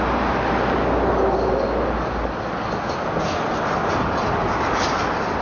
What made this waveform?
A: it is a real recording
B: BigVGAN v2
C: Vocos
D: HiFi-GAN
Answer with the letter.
A